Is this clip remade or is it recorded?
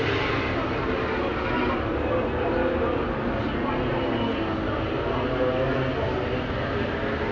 recorded